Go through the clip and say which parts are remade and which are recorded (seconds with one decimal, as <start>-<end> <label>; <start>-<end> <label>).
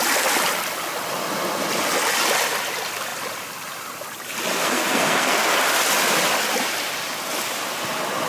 0.0-4.5 recorded; 4.5-5.5 remade; 5.5-8.3 recorded